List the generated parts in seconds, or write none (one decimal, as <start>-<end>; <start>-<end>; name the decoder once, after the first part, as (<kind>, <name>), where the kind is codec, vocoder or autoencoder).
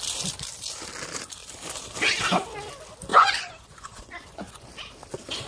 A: 3.1-4.7 (vocoder, Vocos)